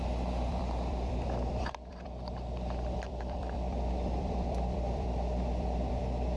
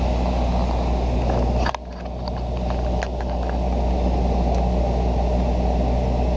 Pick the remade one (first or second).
first